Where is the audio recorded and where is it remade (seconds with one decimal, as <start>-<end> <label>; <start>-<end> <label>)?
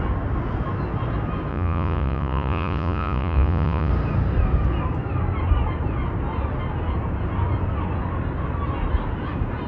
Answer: 0.0-1.5 recorded; 1.5-3.9 remade; 3.9-9.7 recorded